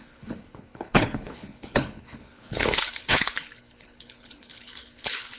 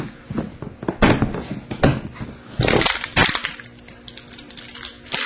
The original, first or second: second